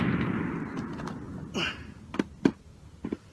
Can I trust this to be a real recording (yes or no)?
yes